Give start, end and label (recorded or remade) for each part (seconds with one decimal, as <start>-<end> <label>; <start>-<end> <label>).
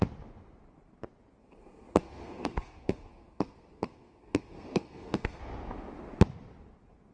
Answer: 0.0-1.4 recorded; 1.4-5.4 remade; 5.4-7.1 recorded